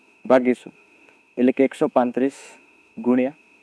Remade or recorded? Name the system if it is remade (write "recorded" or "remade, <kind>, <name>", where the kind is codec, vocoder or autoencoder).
remade, autoencoder, DAC-VAE